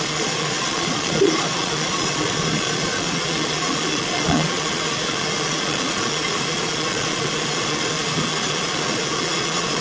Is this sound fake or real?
fake